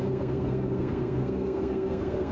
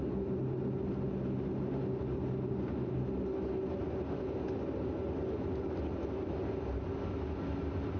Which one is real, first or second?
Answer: second